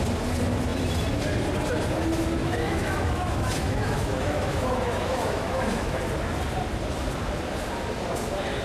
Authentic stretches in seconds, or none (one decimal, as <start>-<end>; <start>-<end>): 0.0-2.4; 6.0-8.6